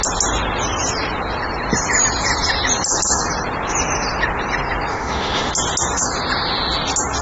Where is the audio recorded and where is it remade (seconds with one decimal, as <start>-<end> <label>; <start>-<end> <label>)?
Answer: 0.0-4.9 recorded; 4.9-5.5 remade; 5.5-7.2 recorded